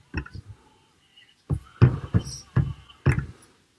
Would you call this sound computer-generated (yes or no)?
no